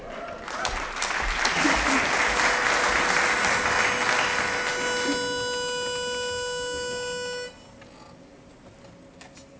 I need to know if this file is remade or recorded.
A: recorded